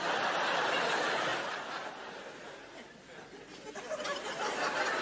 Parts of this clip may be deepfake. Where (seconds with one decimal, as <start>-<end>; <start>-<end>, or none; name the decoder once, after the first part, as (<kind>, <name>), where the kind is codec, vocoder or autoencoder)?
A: none